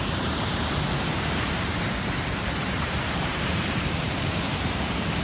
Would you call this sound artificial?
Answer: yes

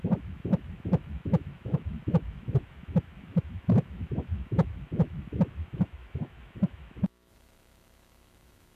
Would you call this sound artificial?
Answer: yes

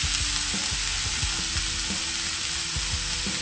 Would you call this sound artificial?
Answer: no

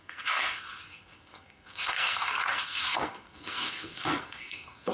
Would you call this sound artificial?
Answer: yes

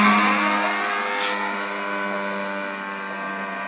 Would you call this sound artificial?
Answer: no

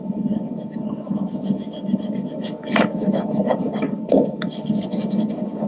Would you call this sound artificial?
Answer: yes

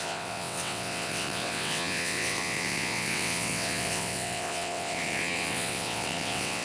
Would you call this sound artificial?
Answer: yes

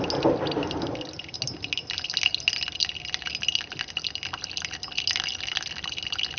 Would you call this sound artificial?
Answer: no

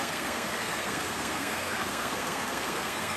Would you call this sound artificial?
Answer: yes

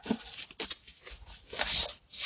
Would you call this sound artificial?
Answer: no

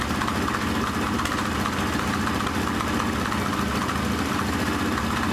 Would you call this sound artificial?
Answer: no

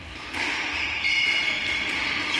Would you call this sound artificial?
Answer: no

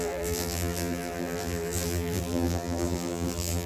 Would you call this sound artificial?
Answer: yes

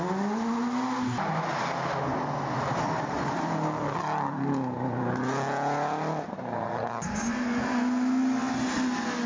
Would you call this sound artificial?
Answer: no